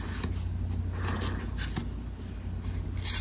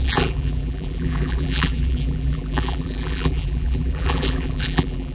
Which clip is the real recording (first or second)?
first